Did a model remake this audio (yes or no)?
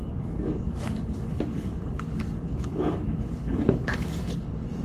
yes